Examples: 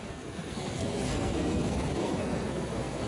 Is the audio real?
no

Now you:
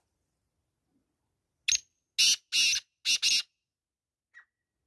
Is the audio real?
yes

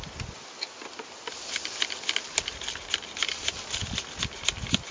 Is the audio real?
yes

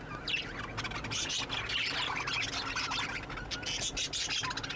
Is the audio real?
yes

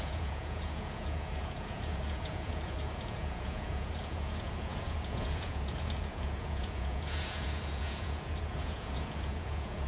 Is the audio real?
no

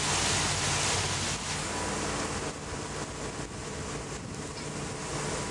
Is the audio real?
yes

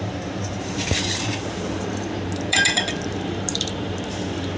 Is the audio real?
no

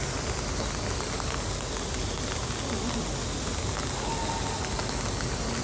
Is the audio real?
yes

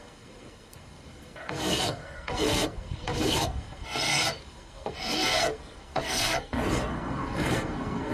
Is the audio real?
no